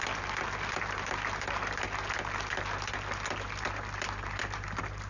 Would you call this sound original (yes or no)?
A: yes